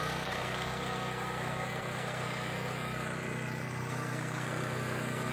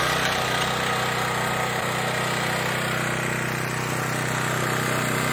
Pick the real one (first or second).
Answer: second